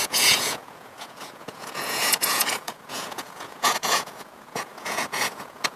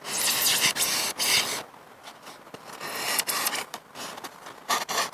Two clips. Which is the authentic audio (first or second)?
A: second